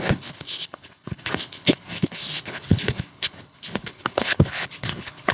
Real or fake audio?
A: fake